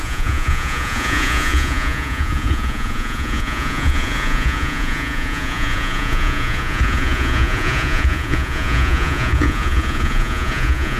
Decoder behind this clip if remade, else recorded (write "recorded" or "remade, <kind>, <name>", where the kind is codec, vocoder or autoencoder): remade, vocoder, Vocos